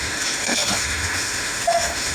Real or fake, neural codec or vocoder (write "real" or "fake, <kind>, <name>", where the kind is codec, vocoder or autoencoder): fake, autoencoder, DAC-VAE